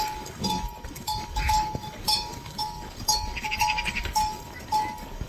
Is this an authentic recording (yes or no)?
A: no